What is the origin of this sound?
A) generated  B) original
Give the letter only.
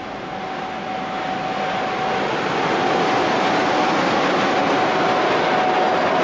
B